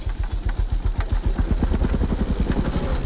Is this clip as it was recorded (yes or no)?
yes